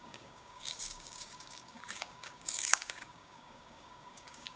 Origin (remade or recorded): remade